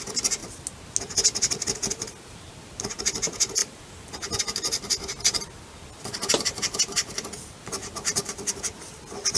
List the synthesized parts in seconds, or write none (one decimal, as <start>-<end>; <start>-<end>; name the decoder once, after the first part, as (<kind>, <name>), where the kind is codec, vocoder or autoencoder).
none